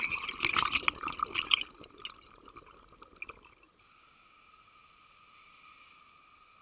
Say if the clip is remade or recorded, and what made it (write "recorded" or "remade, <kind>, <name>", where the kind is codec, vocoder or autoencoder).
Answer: recorded